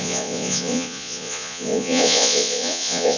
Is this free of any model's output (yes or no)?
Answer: no